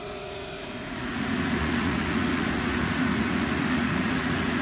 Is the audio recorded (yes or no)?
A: no